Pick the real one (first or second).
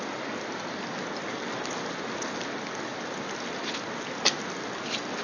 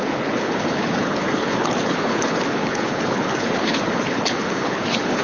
first